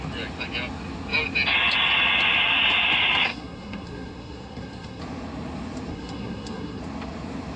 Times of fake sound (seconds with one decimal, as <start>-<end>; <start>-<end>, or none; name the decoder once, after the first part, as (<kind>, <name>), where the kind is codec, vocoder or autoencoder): 3.3-5.0 (codec, SNAC); 5.9-6.8

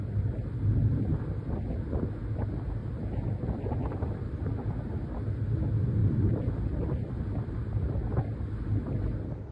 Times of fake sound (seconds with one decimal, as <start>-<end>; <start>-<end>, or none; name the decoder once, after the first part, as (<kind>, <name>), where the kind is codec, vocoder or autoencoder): 2.8-4.4 (vocoder, BigVGAN v2); 6.0-7.5

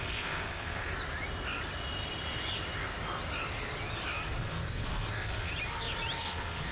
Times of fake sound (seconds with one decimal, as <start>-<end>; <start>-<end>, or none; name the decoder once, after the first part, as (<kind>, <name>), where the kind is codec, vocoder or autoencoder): 0.0-0.9 (codec, SNAC); 4.4-5.5; 6.2-6.7

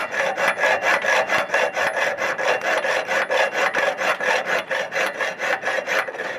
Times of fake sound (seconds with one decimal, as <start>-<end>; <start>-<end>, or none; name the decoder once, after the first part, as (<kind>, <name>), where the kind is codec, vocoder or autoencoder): none

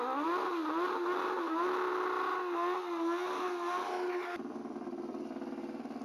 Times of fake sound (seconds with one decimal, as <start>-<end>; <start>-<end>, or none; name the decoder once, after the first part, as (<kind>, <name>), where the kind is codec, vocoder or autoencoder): none

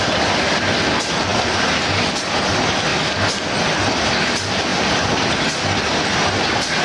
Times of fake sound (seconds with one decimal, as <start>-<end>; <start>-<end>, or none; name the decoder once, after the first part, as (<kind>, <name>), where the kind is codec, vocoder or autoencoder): none